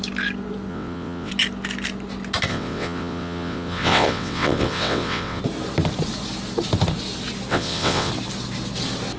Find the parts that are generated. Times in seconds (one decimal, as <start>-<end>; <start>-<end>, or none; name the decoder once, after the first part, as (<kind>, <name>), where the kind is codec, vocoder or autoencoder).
0.7-1.3 (vocoder, WaveNeXt); 2.5-5.4; 7.5-8.1